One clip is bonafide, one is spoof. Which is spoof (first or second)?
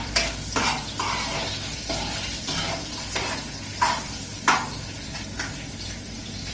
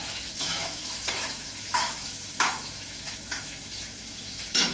second